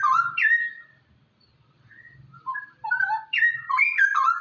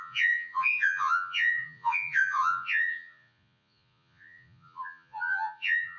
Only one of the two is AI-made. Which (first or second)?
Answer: second